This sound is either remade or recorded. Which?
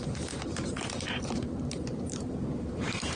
remade